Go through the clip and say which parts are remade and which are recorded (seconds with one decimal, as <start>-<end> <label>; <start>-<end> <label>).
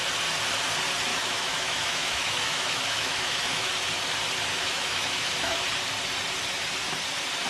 0.0-1.1 recorded; 1.1-3.7 remade; 3.7-4.5 recorded; 4.5-5.6 remade; 5.6-7.5 recorded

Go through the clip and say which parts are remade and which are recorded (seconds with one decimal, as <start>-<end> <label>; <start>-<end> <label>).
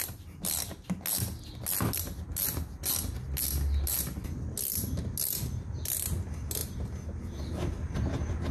0.0-8.5 recorded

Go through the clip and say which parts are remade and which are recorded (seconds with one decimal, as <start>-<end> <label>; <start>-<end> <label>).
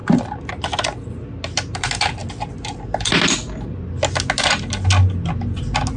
0.0-6.0 recorded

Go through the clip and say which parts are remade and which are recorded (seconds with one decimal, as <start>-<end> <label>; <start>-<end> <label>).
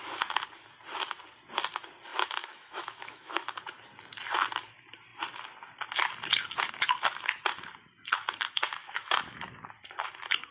0.0-2.1 recorded; 2.1-3.6 remade; 3.6-8.8 recorded; 8.8-9.4 remade; 9.4-10.5 recorded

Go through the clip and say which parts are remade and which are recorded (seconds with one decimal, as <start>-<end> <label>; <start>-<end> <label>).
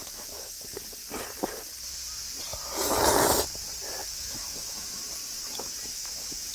0.0-0.8 remade; 0.8-4.0 recorded; 4.0-5.0 remade; 5.0-5.9 recorded; 5.9-6.5 remade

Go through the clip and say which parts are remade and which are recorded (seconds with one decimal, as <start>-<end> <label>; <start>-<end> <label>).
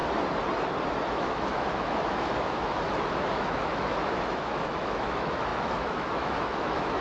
0.0-1.1 recorded; 1.1-7.0 remade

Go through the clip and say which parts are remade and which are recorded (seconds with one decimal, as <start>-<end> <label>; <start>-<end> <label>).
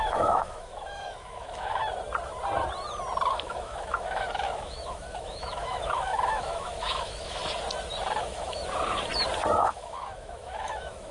0.0-1.8 remade; 1.8-3.3 recorded; 3.3-7.4 remade; 7.4-8.2 recorded; 8.2-8.6 remade; 8.6-9.6 recorded; 9.6-11.1 remade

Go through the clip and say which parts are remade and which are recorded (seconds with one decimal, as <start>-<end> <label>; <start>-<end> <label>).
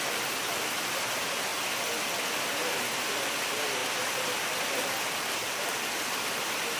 0.0-6.8 recorded